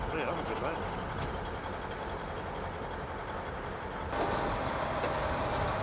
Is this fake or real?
real